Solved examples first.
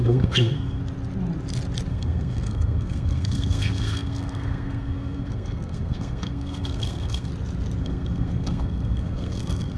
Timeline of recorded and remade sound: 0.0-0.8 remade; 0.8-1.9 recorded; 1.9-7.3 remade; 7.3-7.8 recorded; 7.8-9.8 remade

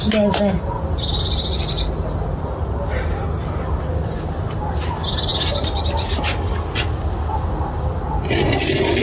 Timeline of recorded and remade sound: 0.0-9.0 recorded

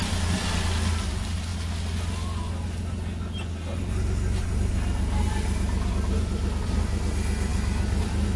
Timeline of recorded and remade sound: 0.0-8.4 recorded